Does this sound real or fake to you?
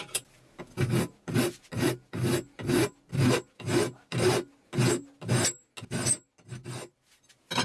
real